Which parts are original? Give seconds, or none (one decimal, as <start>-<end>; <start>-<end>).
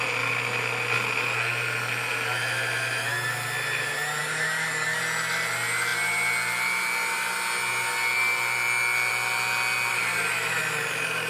0.0-4.2; 5.0-11.3